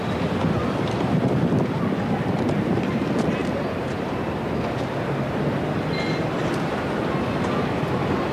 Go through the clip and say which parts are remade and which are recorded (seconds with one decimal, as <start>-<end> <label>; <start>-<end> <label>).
0.0-8.3 recorded